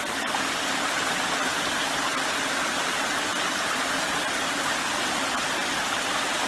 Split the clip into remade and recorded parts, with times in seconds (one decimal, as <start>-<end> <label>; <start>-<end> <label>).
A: 0.0-6.5 recorded